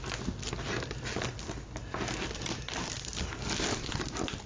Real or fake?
real